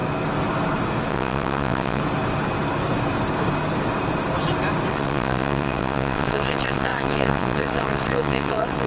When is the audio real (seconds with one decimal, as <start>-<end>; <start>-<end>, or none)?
0.0-1.1; 2.0-4.9